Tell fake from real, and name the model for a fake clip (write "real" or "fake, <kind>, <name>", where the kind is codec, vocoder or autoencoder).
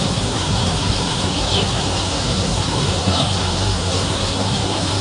fake, codec, SNAC